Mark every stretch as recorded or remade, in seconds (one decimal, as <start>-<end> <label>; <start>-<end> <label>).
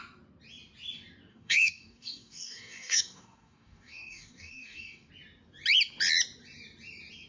0.0-1.3 recorded; 1.3-5.1 remade; 5.1-7.3 recorded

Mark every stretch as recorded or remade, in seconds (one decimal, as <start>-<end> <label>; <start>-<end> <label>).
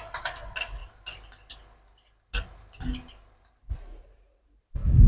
0.0-3.6 recorded; 3.6-4.6 remade; 4.6-5.1 recorded